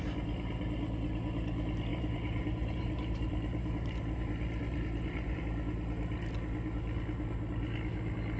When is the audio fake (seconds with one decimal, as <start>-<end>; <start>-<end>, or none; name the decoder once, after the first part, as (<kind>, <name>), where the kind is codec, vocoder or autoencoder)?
1.9-5.4 (vocoder, BigVGAN v2)